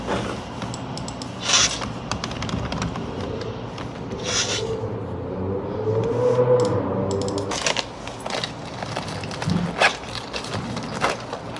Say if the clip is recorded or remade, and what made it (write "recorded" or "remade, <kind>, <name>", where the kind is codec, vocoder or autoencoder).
recorded